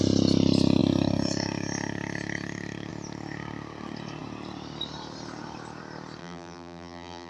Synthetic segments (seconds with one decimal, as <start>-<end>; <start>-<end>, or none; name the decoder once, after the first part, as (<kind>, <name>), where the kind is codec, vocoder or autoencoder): 6.2-7.3 (vocoder, BigVGAN v2)